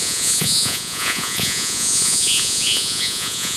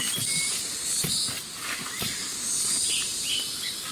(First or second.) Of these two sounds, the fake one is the first